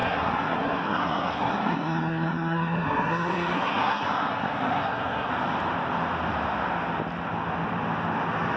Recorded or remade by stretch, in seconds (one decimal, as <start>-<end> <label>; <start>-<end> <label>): 0.0-5.3 remade; 5.3-8.6 recorded